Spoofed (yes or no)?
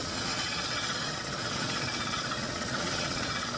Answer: yes